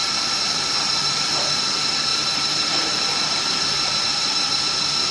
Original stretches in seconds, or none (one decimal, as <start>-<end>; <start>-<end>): 1.1-2.1; 4.6-5.1